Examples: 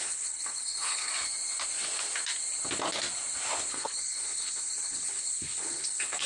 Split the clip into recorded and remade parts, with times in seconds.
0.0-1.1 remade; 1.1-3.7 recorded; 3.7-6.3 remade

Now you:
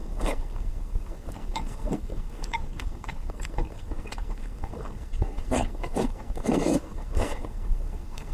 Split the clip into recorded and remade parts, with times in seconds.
0.0-8.3 remade

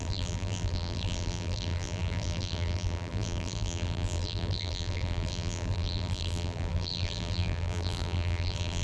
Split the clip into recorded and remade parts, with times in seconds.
0.0-8.8 remade

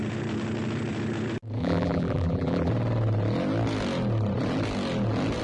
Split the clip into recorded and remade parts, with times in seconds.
0.0-1.6 recorded; 1.6-2.7 remade; 2.7-5.4 recorded

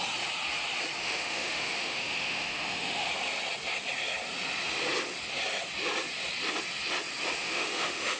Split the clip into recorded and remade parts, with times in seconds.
0.0-1.0 recorded; 1.0-3.1 remade; 3.1-7.4 recorded; 7.4-8.2 remade

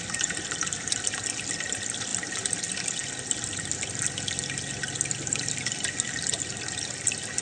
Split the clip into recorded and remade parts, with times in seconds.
0.0-7.4 recorded

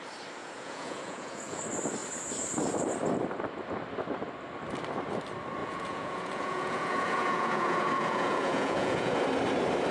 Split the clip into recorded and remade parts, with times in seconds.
0.0-0.4 recorded; 0.4-1.6 remade; 1.6-5.6 recorded; 5.6-9.2 remade; 9.2-9.9 recorded